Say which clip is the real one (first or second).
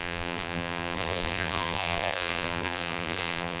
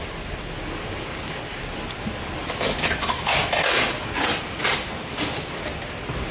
second